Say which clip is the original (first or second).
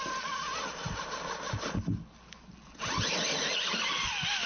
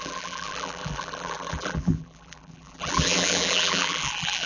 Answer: first